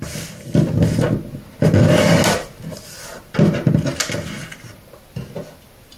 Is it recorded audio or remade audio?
recorded